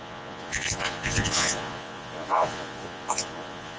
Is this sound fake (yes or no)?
yes